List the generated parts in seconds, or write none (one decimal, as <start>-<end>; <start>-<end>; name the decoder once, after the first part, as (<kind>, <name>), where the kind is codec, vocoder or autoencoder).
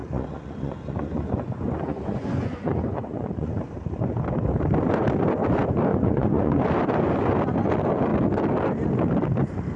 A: 0.0-3.6 (vocoder, Vocos); 5.9-6.6